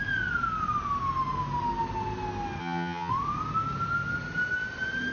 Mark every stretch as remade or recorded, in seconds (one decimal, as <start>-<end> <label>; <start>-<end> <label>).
0.0-2.6 recorded; 2.6-3.1 remade; 3.1-5.1 recorded